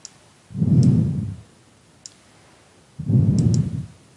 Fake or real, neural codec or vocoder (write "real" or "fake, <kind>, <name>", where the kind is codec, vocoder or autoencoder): real